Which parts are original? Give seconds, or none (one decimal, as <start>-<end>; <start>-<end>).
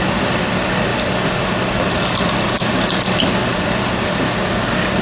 0.0-3.4; 4.0-5.0